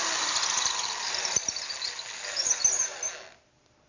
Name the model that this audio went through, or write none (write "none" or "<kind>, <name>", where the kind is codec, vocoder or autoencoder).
none